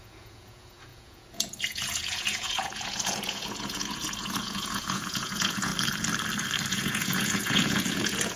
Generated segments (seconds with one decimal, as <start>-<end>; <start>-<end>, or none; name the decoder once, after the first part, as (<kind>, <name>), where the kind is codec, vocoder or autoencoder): 0.0-5.7 (vocoder, Vocos); 6.7-8.4